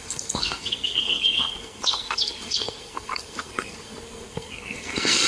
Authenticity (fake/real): fake